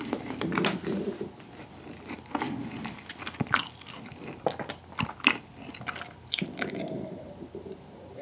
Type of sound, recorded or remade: recorded